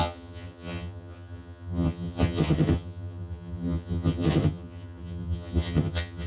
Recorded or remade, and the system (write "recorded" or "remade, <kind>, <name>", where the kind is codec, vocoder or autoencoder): remade, vocoder, HiFi-GAN